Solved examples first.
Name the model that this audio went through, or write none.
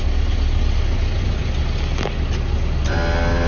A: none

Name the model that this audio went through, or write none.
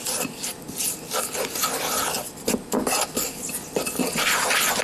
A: none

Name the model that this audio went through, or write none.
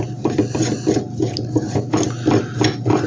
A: none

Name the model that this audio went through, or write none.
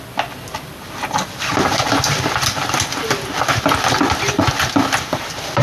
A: none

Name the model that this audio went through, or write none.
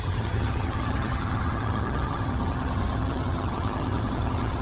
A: vocoder, HiFi-GAN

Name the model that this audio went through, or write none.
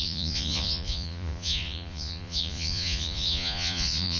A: vocoder, Vocos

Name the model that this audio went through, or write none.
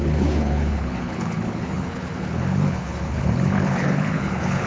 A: codec, HILCodec